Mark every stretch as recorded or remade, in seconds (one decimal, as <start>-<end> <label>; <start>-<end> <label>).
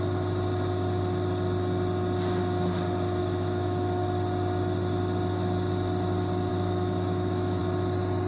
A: 0.0-3.2 recorded; 3.2-4.0 remade; 4.0-6.5 recorded; 6.5-7.6 remade; 7.6-8.3 recorded